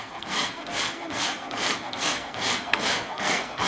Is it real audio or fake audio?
fake